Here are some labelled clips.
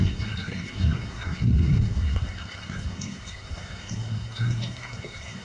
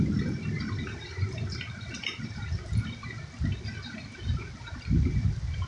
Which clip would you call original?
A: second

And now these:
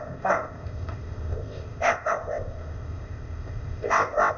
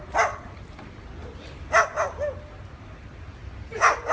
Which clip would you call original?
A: second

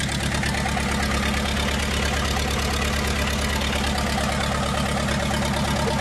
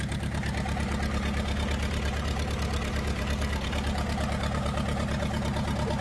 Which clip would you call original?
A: first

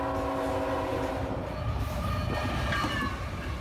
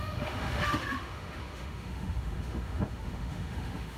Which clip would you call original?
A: first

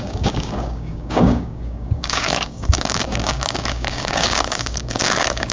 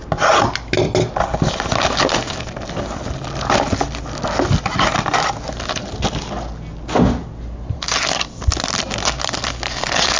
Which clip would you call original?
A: second